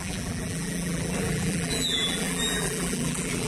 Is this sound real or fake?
fake